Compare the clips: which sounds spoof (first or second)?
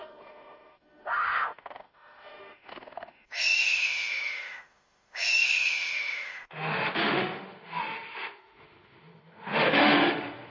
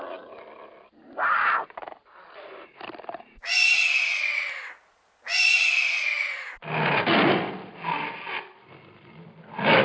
first